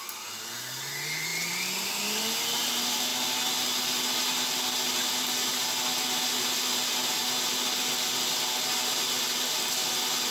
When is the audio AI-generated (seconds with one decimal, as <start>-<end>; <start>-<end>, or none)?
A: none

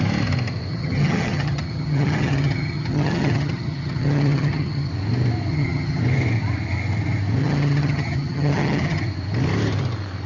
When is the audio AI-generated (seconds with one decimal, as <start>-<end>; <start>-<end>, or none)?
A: 0.7-4.9; 5.5-6.0; 7.4-9.0

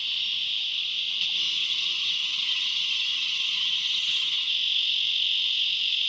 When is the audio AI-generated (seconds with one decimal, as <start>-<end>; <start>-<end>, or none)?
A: 1.6-4.5